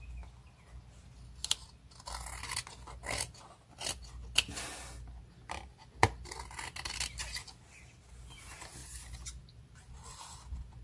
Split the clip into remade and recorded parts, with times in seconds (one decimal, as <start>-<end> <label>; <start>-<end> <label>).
0.0-10.8 recorded